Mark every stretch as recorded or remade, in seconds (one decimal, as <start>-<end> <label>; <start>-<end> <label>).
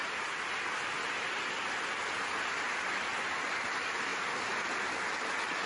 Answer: 0.0-5.7 recorded